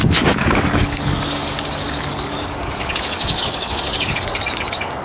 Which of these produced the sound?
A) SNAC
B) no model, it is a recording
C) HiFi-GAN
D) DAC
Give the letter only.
D